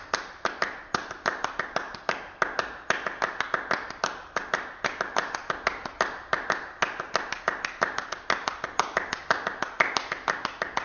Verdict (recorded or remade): recorded